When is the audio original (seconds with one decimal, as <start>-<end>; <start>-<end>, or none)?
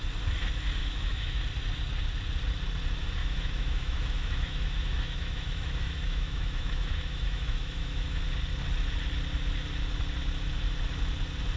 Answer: 0.0-0.8; 1.4-3.2; 8.2-11.6